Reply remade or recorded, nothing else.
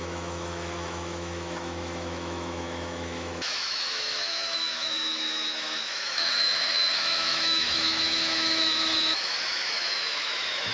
remade